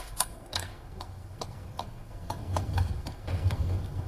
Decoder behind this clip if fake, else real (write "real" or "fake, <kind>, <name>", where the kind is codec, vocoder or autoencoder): fake, codec, SNAC